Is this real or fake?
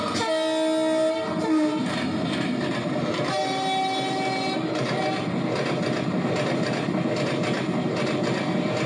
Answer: real